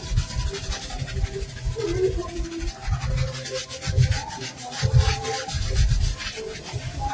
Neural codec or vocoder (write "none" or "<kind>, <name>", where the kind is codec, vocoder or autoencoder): none